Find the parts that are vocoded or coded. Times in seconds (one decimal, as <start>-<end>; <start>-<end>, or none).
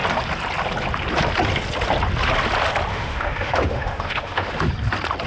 2.9-4.7